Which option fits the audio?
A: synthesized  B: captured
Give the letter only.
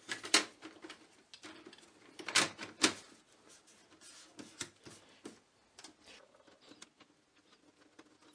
B